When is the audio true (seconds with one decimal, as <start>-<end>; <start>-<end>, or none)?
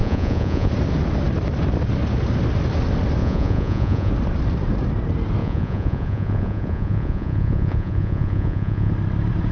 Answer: 0.7-3.2; 4.1-5.4; 8.9-9.5